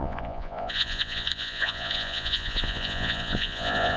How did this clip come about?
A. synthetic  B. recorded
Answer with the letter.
A